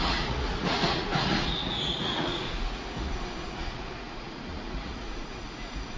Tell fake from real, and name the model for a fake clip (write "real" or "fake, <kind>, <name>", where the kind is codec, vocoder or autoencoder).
fake, vocoder, Vocos